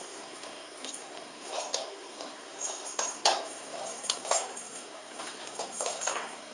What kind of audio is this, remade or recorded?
remade